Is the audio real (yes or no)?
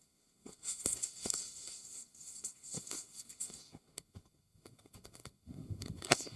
no